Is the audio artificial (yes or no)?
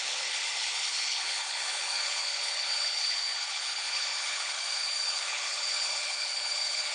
yes